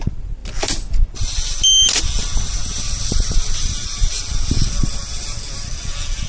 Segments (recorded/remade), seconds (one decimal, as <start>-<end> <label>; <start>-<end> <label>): 0.0-6.3 remade